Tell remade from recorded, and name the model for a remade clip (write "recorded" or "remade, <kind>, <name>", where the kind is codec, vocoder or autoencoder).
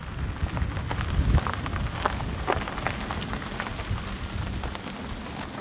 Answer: recorded